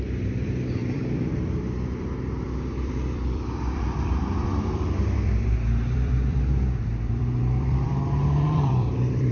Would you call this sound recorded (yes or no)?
no